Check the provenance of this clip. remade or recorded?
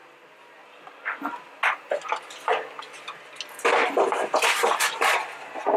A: recorded